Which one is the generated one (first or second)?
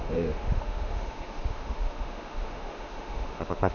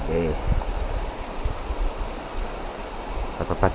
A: first